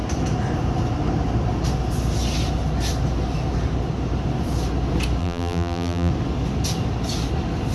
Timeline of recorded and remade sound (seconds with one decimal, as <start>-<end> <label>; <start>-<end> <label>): 0.0-5.2 recorded; 5.2-6.1 remade; 6.1-7.7 recorded